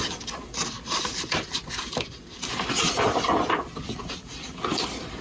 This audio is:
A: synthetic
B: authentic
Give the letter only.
A